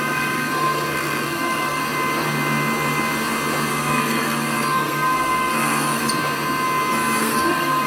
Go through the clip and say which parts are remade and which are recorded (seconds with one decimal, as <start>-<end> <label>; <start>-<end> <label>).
0.0-1.8 remade; 1.8-3.7 recorded; 3.7-6.0 remade; 6.0-7.2 recorded; 7.2-7.9 remade